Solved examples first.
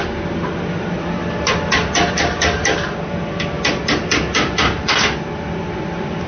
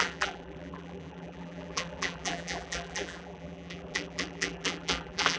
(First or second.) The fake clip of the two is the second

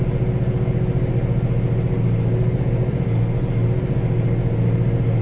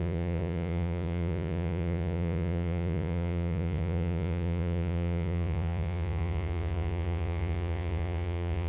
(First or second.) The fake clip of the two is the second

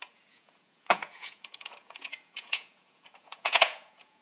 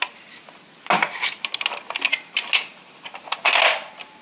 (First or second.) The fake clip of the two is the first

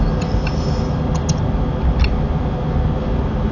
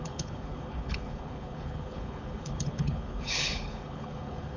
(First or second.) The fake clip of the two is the second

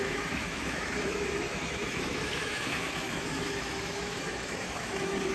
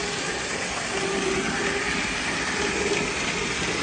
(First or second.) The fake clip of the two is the first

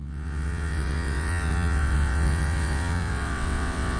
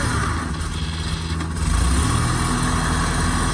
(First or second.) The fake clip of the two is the first